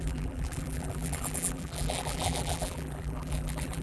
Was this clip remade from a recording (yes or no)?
yes